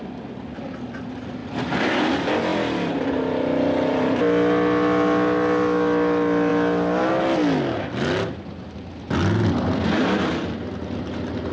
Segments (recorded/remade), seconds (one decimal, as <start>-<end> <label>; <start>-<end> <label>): 0.0-1.4 recorded; 1.4-1.9 remade; 1.9-2.5 recorded; 2.5-4.2 remade; 4.2-11.5 recorded